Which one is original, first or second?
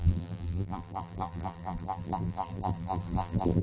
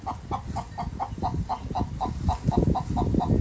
second